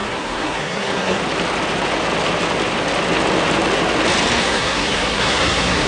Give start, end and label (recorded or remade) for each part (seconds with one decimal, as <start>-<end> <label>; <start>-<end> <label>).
0.0-1.2 remade; 1.2-4.4 recorded; 4.4-5.9 remade